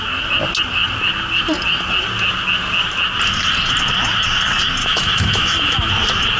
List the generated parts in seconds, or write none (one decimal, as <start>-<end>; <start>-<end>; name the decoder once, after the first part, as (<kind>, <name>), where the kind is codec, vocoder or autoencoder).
4.8-5.9 (autoencoder, DAC-VAE)